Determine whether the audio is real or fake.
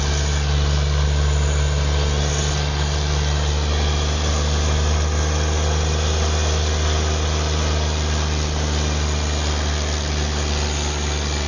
real